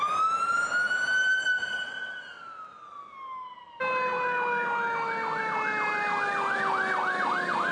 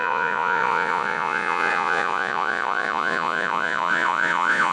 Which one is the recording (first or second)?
first